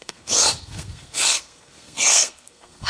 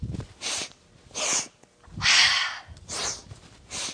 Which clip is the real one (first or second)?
second